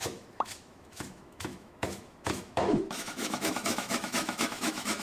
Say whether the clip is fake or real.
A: fake